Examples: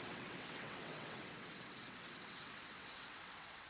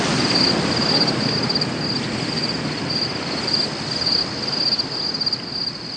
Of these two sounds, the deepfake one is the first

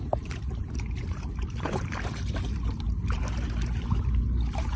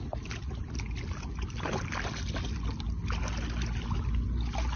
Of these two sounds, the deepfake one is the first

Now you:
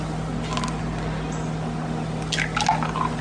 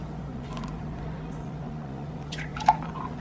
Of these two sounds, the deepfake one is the second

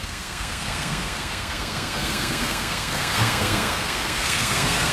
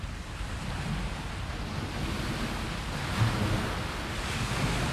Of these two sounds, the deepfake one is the first